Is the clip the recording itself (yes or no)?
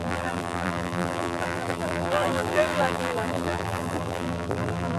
no